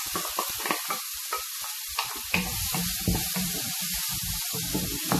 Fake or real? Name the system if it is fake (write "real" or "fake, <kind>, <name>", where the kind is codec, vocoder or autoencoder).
fake, vocoder, BigVGAN v2